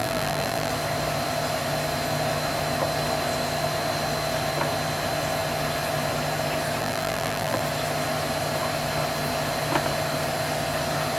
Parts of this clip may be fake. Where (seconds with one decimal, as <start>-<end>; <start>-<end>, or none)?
0.0-0.7; 6.8-7.6